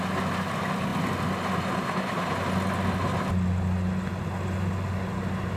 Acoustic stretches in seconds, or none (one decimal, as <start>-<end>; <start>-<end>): 0.0-5.6